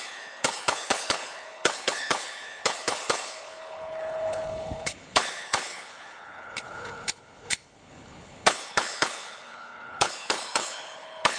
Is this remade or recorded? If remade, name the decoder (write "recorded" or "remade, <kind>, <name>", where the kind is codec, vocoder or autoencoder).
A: remade, codec, HILCodec